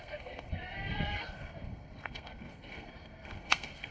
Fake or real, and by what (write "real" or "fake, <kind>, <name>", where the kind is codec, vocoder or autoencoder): fake, codec, SNAC